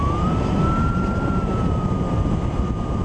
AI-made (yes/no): yes